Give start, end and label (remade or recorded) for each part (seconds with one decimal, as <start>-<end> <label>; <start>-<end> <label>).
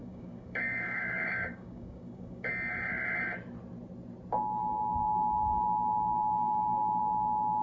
0.0-2.5 remade; 2.5-4.6 recorded; 4.6-7.0 remade; 7.0-7.6 recorded